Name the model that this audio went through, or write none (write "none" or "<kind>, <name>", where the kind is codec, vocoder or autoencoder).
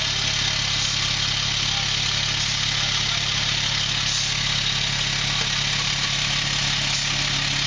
none